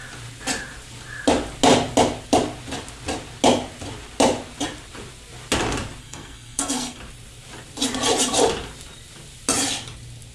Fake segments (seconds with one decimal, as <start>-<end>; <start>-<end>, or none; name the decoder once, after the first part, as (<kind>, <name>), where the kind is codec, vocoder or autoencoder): 6.0-7.0 (codec, SNAC)